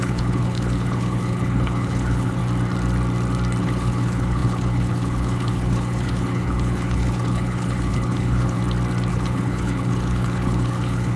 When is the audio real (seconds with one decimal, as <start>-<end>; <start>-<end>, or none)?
2.4-3.6; 8.6-9.1